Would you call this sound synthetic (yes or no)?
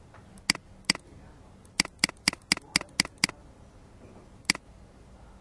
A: no